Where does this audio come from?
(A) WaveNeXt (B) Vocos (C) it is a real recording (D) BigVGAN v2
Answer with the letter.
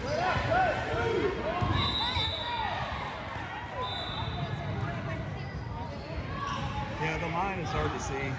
C